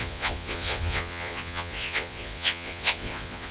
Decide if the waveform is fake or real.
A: fake